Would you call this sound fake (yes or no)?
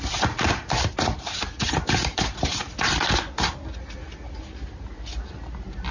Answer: no